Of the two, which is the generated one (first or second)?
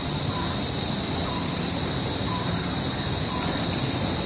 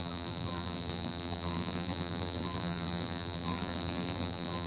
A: second